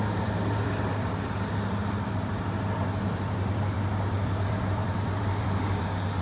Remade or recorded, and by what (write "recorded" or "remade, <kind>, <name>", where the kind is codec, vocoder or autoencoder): remade, vocoder, BigVGAN v2